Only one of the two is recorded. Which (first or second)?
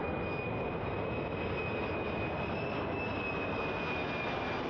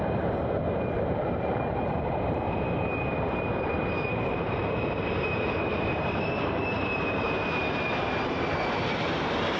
first